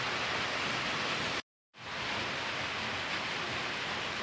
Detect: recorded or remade recorded